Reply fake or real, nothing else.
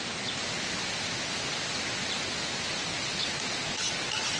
real